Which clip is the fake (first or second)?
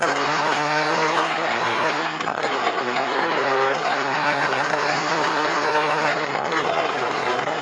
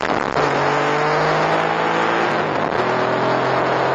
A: first